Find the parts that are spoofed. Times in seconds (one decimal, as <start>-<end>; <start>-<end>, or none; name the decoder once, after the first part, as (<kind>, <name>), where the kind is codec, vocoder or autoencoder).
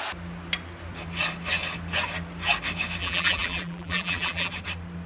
3.0-4.5 (vocoder, BigVGAN v2)